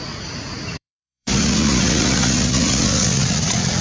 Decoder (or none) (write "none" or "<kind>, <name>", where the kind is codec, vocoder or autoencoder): vocoder, Vocos